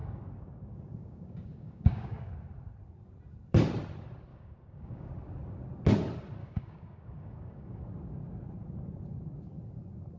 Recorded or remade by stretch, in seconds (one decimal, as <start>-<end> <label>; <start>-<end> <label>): 0.0-2.3 remade; 2.3-4.3 recorded; 4.3-5.1 remade; 5.1-6.4 recorded; 6.4-7.9 remade; 7.9-10.2 recorded